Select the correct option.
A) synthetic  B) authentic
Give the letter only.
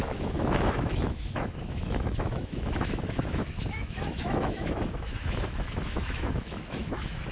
A